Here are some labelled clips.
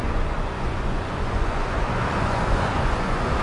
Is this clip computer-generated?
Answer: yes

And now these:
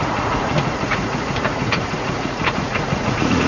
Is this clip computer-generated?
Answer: yes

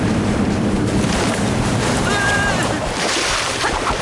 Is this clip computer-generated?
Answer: yes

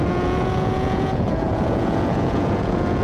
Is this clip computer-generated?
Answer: yes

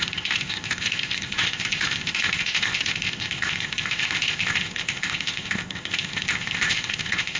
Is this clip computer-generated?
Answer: yes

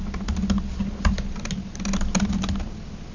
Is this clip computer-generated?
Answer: no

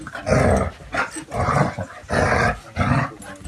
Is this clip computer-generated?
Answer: no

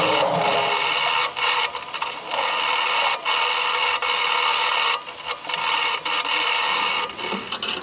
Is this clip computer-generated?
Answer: no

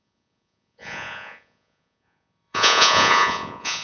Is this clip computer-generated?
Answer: yes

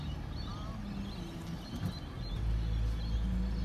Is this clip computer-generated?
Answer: no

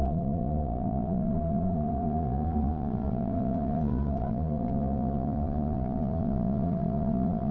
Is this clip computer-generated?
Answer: yes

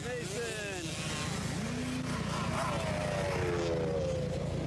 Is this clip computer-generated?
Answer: no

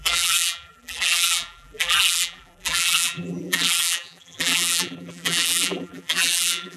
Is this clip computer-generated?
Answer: yes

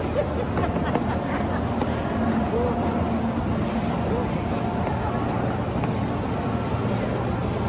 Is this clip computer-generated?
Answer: no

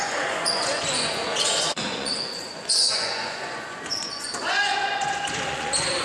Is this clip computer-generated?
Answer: yes